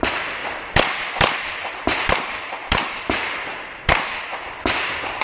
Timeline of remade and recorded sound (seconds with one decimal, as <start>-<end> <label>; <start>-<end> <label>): 0.0-1.6 recorded; 1.6-3.2 remade; 3.2-5.2 recorded